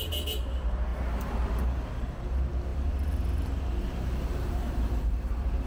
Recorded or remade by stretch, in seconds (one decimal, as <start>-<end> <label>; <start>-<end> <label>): 0.0-5.7 remade